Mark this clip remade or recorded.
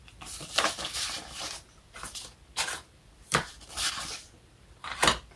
remade